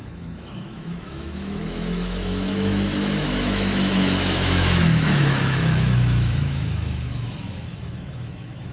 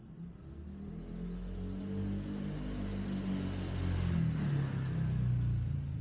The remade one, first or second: first